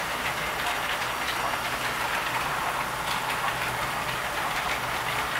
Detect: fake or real real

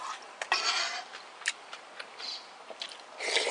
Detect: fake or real real